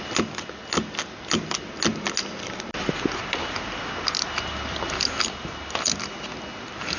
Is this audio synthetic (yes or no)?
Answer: no